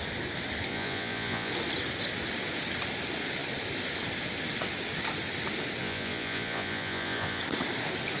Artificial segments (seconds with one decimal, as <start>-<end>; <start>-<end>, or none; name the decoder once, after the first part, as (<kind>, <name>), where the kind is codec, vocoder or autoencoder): 0.7-1.5 (vocoder, Vocos); 5.8-7.4